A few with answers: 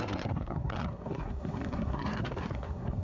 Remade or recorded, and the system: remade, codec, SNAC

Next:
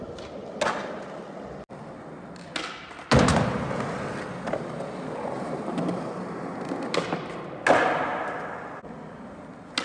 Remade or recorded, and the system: recorded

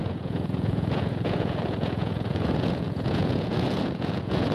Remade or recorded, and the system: remade, vocoder, Vocos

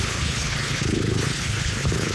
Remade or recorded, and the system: remade, codec, HILCodec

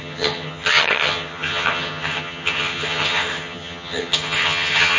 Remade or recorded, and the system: remade, vocoder, HiFi-GAN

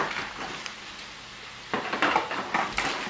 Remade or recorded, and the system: recorded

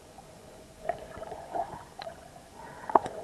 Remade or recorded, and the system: remade, vocoder, Vocos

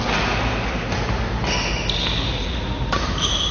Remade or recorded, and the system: recorded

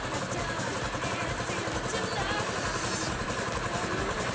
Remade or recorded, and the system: recorded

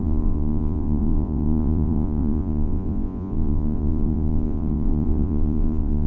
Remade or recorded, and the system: remade, vocoder, Vocos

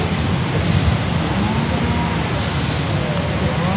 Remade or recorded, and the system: recorded